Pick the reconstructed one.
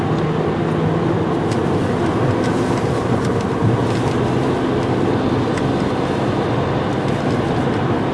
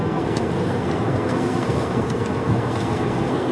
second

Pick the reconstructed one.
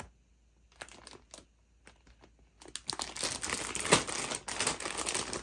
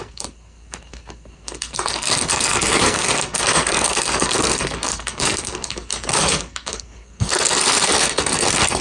second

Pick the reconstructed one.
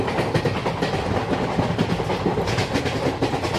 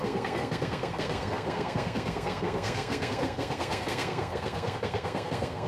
second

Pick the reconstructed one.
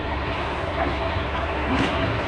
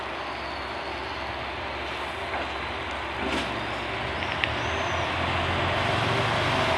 first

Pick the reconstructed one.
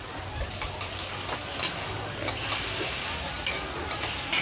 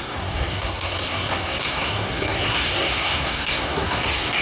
second